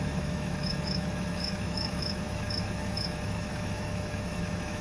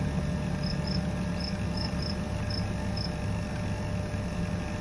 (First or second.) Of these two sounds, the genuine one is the second